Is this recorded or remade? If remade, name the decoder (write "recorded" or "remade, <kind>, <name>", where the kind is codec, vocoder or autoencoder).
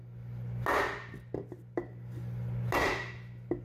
recorded